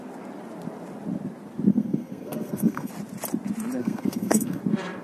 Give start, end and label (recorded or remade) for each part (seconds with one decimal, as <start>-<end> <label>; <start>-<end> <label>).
0.0-1.7 recorded; 1.7-2.9 remade; 2.9-3.8 recorded; 3.8-4.6 remade; 4.6-5.0 recorded